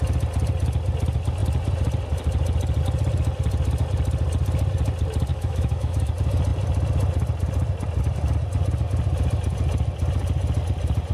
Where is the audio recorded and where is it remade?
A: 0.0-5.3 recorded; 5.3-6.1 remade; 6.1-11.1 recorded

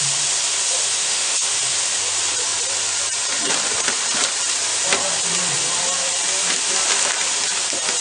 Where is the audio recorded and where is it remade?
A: 0.0-1.0 recorded; 1.0-1.6 remade; 1.6-8.0 recorded

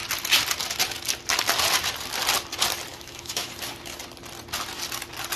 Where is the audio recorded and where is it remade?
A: 0.0-2.9 recorded; 2.9-3.5 remade; 3.5-5.4 recorded

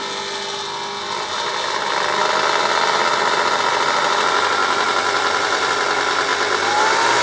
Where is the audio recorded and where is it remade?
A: 0.0-7.2 recorded

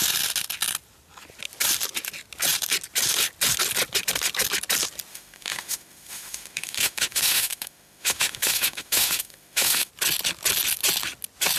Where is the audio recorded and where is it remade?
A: 0.0-5.1 recorded; 5.1-9.9 remade; 9.9-11.6 recorded

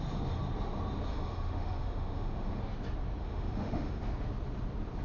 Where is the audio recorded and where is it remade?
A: 0.0-1.1 recorded; 1.1-2.6 remade; 2.6-3.2 recorded; 3.2-4.0 remade; 4.0-5.0 recorded